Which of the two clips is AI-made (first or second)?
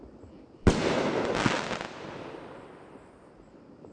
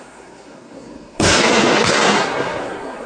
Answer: second